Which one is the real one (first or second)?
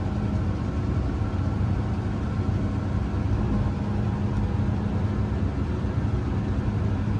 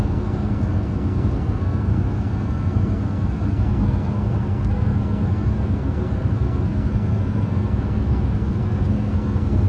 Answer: first